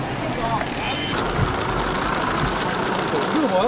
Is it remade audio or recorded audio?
recorded